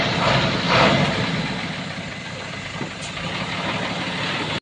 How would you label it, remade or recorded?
recorded